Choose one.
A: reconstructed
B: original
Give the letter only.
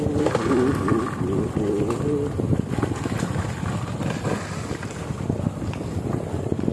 B